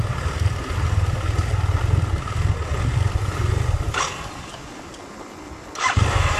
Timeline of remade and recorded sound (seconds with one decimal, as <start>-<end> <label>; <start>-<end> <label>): 0.0-1.8 remade; 1.8-2.7 recorded; 2.7-3.5 remade; 3.5-6.4 recorded

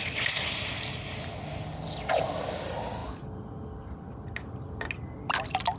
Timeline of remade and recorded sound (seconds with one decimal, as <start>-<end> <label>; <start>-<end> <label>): 0.0-5.8 recorded

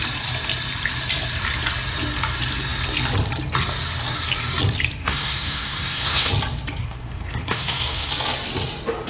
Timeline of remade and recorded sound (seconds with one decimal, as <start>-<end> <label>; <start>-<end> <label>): 0.0-5.0 recorded; 5.0-6.3 remade; 6.3-6.8 recorded; 6.8-8.1 remade; 8.1-9.1 recorded

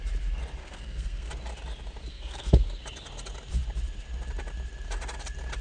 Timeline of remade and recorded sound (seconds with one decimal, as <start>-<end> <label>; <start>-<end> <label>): 0.0-0.6 recorded; 0.6-1.3 remade; 1.3-2.1 recorded; 2.1-2.8 remade; 2.8-5.6 recorded

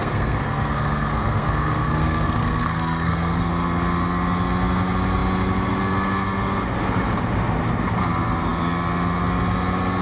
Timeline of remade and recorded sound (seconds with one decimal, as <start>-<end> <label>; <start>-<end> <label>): 0.0-3.5 remade; 3.5-10.0 recorded

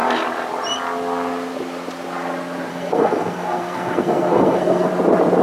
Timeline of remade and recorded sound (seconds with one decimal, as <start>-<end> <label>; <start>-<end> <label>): 0.0-2.7 recorded; 2.7-4.9 remade; 4.9-5.4 recorded